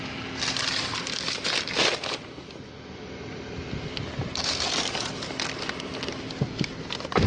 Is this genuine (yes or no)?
yes